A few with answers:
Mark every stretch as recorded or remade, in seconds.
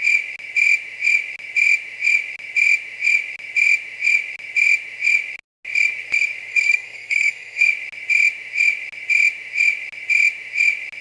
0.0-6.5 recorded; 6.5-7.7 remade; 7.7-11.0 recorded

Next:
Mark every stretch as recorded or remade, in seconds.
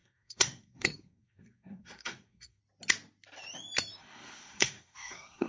0.0-2.6 remade; 2.6-4.0 recorded; 4.0-5.5 remade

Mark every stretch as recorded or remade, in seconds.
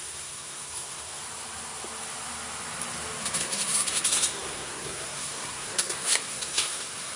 0.0-1.2 remade; 1.2-3.2 recorded; 3.2-7.2 remade